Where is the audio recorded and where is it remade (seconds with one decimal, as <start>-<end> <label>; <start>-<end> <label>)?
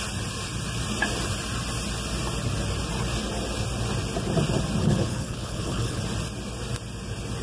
0.0-4.8 recorded; 4.8-6.0 remade; 6.0-7.4 recorded